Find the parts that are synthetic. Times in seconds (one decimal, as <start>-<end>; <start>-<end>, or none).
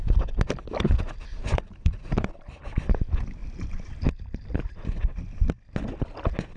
1.3-2.9; 3.4-3.9